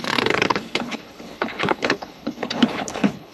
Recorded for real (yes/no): no